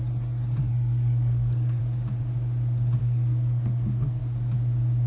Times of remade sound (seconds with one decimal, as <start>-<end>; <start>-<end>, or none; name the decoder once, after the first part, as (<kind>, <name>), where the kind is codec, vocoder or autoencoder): 0.6-1.8 (codec, SNAC); 3.0-4.2